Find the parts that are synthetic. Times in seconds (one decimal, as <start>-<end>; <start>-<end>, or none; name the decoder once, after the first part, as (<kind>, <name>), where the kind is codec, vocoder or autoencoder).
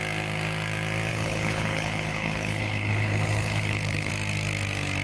1.1-4.1 (codec, HILCodec)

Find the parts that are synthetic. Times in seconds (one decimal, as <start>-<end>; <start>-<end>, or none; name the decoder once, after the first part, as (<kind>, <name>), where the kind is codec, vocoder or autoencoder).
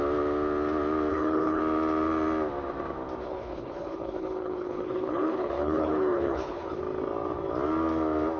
1.1-1.6 (codec, HILCodec); 3.2-6.8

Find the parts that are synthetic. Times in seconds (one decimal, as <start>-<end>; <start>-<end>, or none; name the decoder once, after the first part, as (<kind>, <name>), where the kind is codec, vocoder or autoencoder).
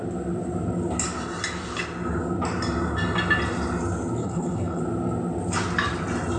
4.2-4.8 (codec, HILCodec)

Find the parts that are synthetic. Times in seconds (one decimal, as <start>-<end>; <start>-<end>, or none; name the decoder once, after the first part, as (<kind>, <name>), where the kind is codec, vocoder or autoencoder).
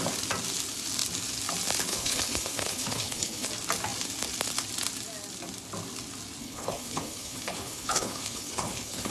1.9-3.5 (codec, HILCodec); 6.4-9.1